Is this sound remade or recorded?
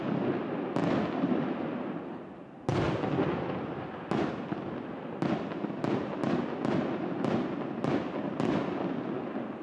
recorded